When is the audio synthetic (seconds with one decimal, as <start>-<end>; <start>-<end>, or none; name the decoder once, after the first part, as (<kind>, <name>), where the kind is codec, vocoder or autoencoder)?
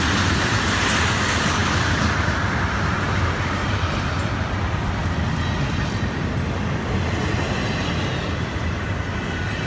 none